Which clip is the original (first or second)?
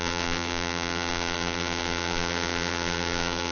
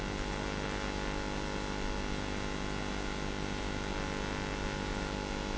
second